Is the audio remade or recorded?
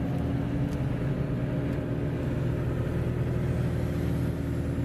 recorded